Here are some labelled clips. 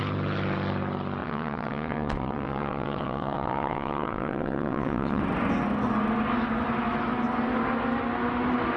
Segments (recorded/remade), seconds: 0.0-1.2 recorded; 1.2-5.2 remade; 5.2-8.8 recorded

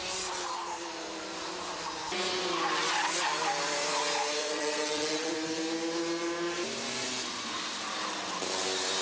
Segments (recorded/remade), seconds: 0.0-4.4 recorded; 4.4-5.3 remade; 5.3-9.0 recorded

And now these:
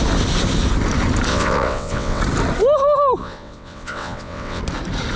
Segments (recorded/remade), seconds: 0.0-1.3 recorded; 1.3-2.2 remade; 2.2-3.2 recorded; 3.2-4.6 remade; 4.6-5.2 recorded

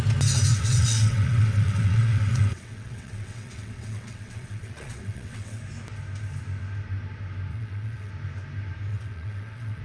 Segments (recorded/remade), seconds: 0.0-0.5 recorded; 0.5-5.6 remade; 5.6-7.5 recorded; 7.5-8.1 remade; 8.1-8.9 recorded; 8.9-9.8 remade